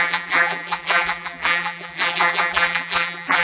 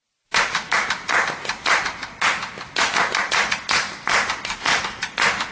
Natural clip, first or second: second